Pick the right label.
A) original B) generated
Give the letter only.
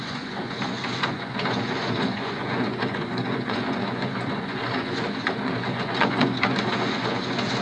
B